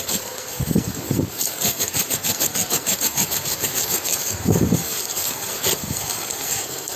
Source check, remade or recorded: remade